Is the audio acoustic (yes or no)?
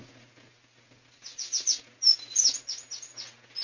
yes